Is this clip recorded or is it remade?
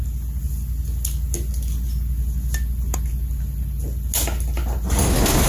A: recorded